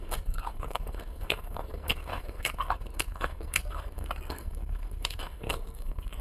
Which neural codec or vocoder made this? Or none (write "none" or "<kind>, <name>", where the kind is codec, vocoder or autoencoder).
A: codec, SNAC